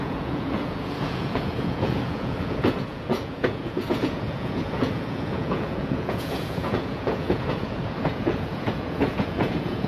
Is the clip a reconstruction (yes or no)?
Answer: yes